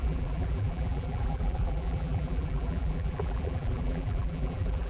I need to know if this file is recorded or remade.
remade